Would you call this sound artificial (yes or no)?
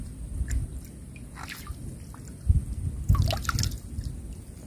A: no